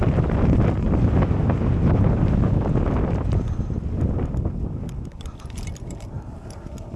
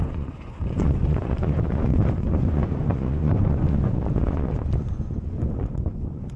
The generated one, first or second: second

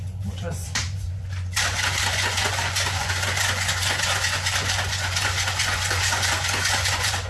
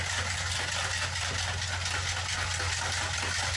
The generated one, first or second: first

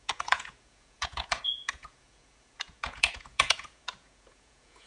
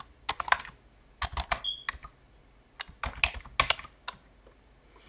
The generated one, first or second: first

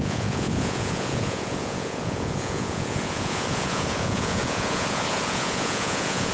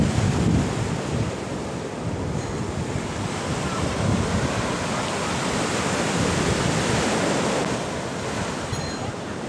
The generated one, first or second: first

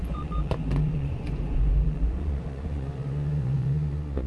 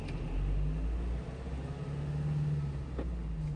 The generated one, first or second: first